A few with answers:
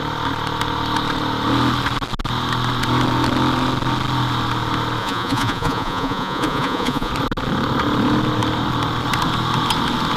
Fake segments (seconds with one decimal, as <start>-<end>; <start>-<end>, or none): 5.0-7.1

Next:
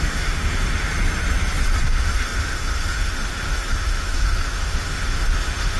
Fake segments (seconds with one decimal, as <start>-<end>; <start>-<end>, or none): 0.0-0.9; 1.9-5.8

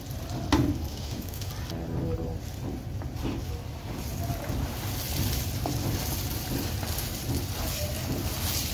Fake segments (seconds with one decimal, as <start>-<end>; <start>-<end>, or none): 0.9-1.5

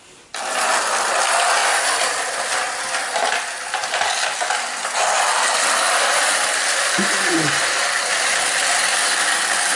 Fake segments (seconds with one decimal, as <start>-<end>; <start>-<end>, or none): 1.6-2.8; 8.9-9.8